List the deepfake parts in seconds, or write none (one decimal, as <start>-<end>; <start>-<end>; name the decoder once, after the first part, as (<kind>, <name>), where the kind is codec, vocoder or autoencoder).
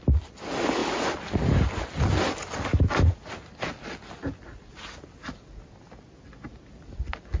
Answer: none